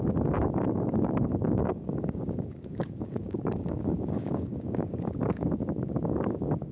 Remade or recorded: remade